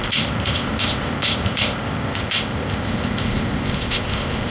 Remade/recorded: remade